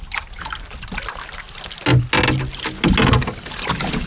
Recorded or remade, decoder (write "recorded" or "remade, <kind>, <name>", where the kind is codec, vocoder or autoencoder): recorded